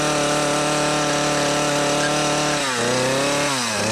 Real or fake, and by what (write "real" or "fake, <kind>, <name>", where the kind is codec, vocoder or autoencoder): real